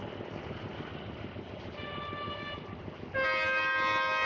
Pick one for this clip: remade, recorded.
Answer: recorded